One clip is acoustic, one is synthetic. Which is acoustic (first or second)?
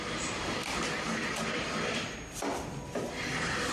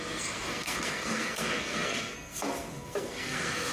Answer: first